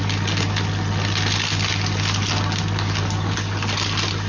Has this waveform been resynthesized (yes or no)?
no